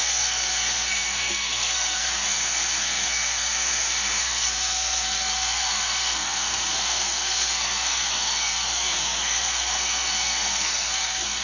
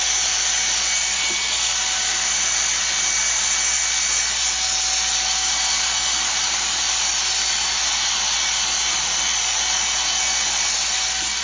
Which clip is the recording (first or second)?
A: second